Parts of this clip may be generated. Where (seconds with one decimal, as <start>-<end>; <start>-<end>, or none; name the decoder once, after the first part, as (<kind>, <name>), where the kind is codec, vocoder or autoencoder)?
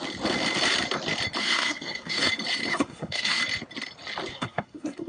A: 1.4-2.3 (codec, SNAC); 2.7-3.4; 4.3-5.1